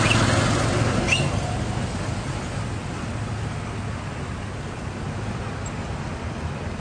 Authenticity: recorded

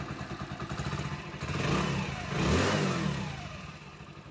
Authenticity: recorded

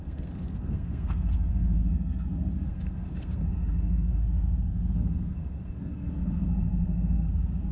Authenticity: remade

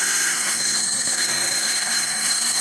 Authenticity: remade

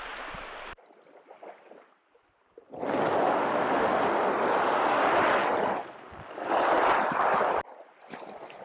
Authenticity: recorded